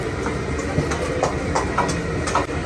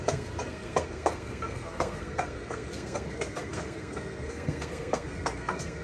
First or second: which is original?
first